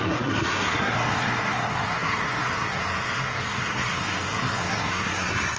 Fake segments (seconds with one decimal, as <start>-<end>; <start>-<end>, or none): 0.0-5.6

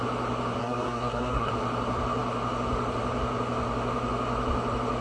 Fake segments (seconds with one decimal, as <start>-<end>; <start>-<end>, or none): 0.6-1.5

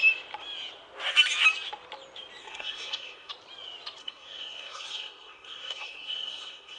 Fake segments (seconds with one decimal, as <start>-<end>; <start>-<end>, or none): 2.4-3.3; 4.0-6.8

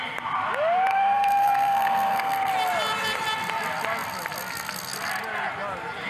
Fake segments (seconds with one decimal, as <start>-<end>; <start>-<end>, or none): 0.9-2.5

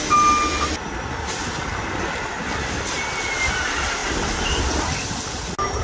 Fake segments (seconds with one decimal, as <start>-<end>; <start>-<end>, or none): none

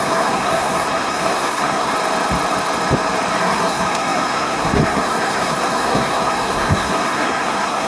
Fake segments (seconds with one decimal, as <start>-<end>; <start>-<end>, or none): 0.0-1.9; 3.4-7.9

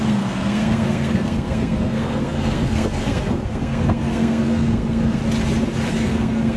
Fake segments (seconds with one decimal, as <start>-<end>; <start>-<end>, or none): 0.0-5.2; 5.9-6.6